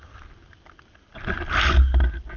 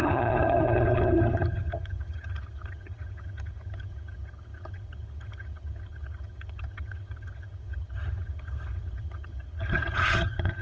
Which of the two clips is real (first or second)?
first